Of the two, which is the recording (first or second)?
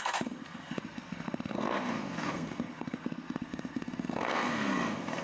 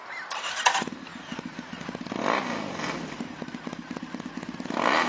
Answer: second